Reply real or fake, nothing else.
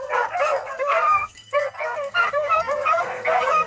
fake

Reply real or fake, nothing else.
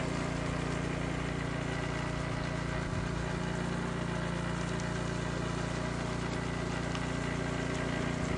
real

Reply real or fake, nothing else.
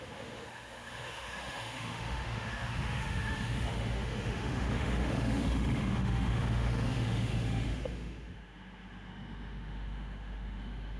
fake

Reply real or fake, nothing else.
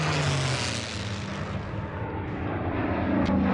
real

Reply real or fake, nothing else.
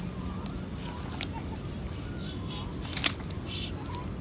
real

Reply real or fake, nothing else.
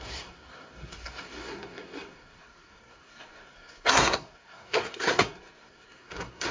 fake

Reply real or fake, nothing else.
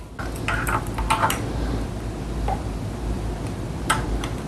real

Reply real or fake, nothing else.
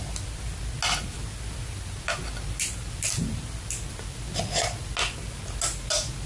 real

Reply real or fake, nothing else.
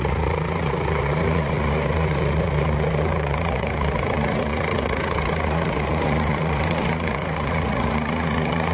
fake